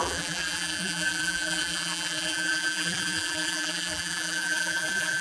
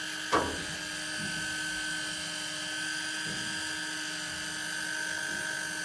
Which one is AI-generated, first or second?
first